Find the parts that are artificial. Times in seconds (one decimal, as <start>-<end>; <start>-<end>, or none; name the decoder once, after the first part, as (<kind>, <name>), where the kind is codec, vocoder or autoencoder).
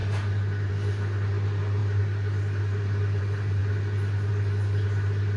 none